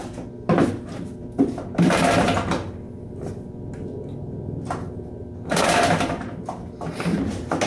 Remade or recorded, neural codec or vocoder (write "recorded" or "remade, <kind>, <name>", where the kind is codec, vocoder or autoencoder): recorded